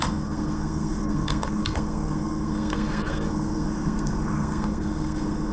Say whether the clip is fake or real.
fake